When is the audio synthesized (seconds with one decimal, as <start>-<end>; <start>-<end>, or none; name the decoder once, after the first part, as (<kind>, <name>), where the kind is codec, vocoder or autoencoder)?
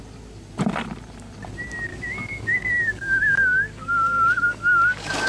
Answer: 1.9-5.3 (codec, DAC)